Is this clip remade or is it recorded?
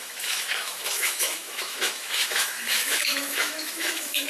remade